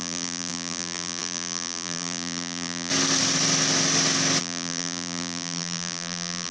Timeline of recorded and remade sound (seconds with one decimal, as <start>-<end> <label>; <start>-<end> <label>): 0.0-2.9 remade; 2.9-4.4 recorded; 4.4-6.5 remade